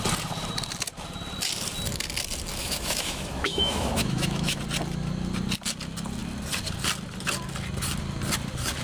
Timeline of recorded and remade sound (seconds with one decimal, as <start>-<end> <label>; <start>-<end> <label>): 0.0-2.6 recorded; 2.6-4.6 remade; 4.6-8.8 recorded